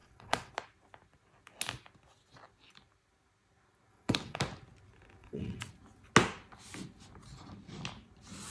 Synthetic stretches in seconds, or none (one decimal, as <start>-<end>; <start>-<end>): 0.0-0.5; 3.9-4.4; 5.2-5.7